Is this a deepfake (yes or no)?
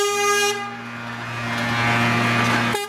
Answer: no